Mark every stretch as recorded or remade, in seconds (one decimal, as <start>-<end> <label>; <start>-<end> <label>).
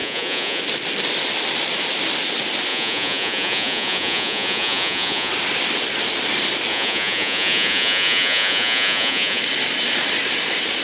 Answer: 0.0-0.6 remade; 0.6-2.7 recorded; 2.7-5.3 remade; 5.3-6.7 recorded; 6.7-9.4 remade; 9.4-10.8 recorded